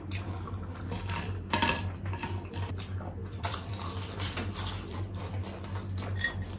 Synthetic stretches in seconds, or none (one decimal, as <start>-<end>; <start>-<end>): 3.2-5.2